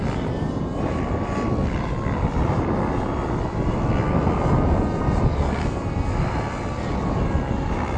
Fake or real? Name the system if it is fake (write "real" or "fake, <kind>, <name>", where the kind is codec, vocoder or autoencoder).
real